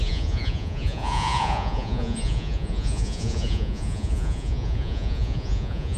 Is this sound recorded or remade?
remade